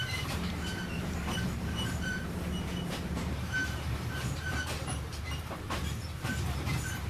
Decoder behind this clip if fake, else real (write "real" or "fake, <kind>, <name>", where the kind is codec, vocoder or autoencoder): fake, vocoder, BigVGAN v2